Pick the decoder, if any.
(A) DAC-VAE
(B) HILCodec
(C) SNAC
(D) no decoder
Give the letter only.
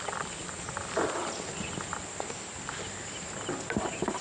D